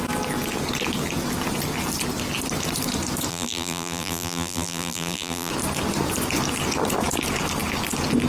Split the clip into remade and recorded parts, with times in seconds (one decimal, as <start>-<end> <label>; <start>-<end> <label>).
0.0-3.3 recorded; 3.3-5.5 remade; 5.5-8.3 recorded